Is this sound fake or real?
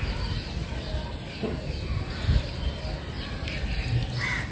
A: real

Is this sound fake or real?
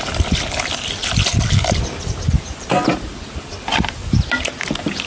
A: real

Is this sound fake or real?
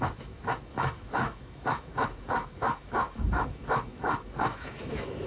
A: fake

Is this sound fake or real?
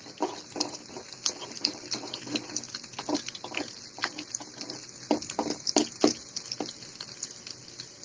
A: real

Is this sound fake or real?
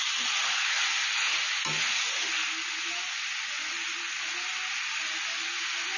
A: real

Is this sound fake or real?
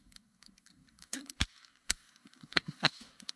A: fake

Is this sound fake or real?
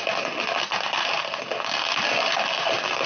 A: real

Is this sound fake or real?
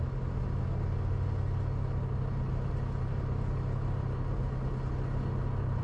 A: real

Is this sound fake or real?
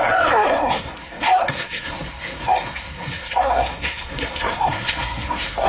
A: fake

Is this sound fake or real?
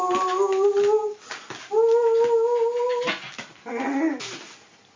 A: real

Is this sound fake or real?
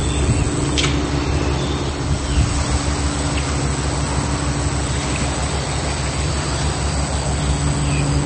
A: real